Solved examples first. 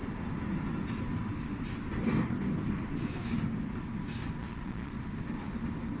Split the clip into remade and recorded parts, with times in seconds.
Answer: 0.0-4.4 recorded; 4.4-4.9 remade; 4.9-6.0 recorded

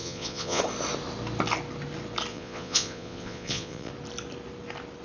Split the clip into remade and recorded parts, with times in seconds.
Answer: 0.0-0.6 remade; 0.6-2.3 recorded; 2.3-3.9 remade; 3.9-5.0 recorded

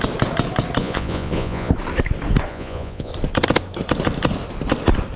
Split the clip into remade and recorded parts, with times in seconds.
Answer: 0.0-0.8 recorded; 0.8-1.7 remade; 1.7-2.5 recorded; 2.5-3.1 remade; 3.1-5.2 recorded